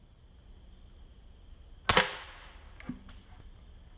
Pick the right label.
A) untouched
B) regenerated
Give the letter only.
A